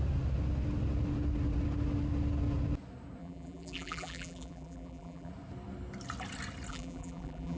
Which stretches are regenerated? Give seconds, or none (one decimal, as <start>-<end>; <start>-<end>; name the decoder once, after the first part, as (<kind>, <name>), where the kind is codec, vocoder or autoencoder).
3.2-5.3 (vocoder, BigVGAN v2); 6.7-7.6

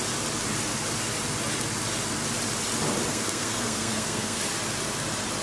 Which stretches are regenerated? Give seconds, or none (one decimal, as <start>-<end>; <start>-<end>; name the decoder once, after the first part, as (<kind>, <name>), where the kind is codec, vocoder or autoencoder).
3.1-4.4 (codec, SNAC)

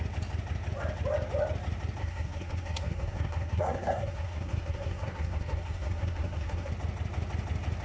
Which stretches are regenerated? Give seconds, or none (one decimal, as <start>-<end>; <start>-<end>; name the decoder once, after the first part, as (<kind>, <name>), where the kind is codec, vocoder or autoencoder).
2.0-6.7 (codec, SNAC)

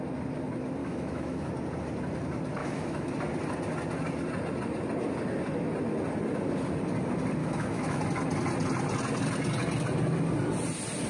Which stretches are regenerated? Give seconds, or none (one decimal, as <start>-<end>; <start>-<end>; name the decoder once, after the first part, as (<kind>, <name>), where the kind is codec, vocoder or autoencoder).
0.8-1.5 (autoencoder, DAC-VAE); 2.6-3.1; 7.4-8.0